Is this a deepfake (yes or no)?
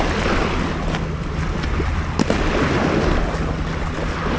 no